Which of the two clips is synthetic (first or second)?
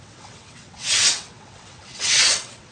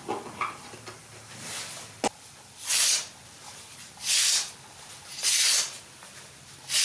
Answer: first